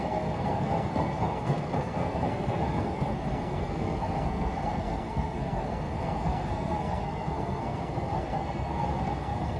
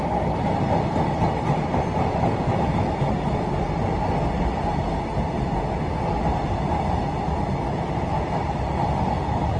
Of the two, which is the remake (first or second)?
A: first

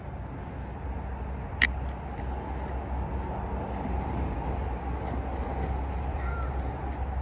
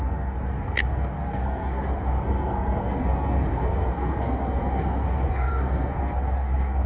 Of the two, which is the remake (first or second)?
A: second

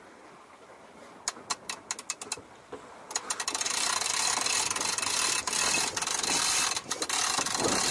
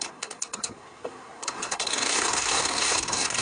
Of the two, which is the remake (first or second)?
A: second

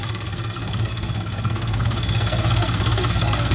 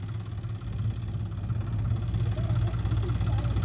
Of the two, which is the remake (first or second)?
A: first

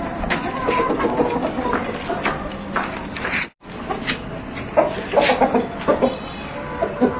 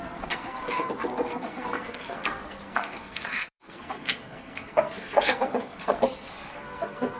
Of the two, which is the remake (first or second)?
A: second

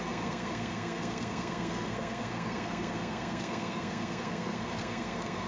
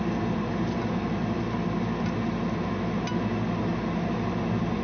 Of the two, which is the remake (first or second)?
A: first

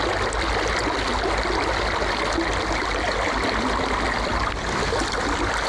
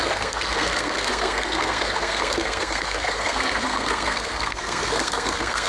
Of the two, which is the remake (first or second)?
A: second